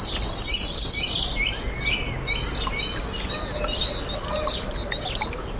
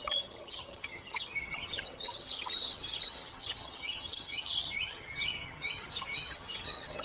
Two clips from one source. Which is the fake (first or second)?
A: second